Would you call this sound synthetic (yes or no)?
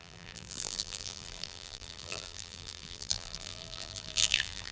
yes